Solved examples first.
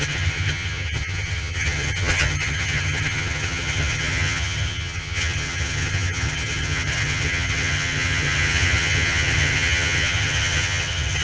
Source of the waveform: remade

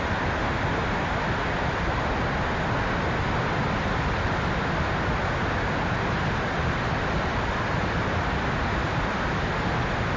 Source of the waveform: recorded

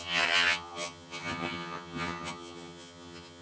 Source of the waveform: remade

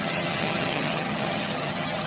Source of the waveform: remade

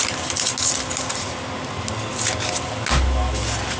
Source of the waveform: recorded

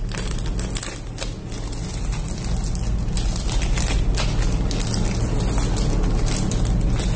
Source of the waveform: recorded